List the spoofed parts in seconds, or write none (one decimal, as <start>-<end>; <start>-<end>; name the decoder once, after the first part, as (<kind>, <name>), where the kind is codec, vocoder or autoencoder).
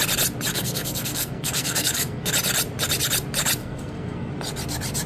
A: 0.5-2.3 (codec, SNAC); 3.6-4.3